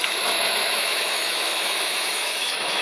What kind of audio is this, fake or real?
fake